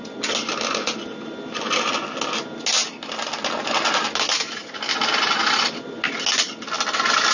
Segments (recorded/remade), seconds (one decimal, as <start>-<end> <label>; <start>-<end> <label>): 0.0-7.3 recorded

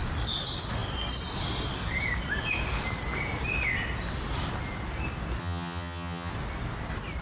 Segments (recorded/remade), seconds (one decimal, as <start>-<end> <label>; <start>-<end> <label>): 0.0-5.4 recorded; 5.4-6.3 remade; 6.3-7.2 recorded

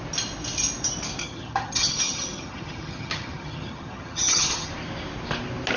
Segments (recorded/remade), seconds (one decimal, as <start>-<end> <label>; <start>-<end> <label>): 0.0-1.2 recorded; 1.2-4.7 remade; 4.7-5.8 recorded